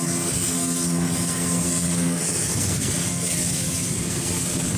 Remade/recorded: remade